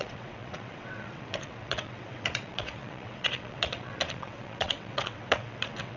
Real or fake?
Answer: fake